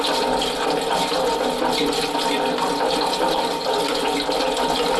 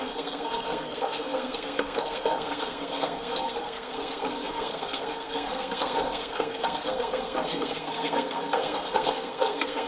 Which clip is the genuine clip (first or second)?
first